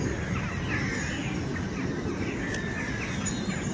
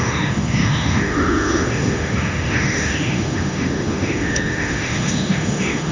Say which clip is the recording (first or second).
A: first